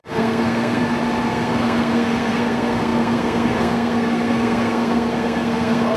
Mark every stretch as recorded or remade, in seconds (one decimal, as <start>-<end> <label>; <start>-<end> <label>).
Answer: 0.0-0.8 remade; 0.8-1.3 recorded; 1.3-6.0 remade